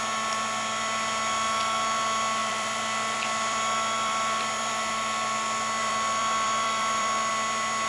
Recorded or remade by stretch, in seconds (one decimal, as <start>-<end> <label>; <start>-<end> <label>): 0.0-2.4 recorded; 2.4-4.8 remade; 4.8-5.8 recorded; 5.8-7.3 remade; 7.3-7.9 recorded